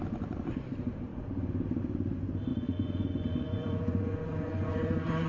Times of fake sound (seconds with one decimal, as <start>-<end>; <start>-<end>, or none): 2.5-5.3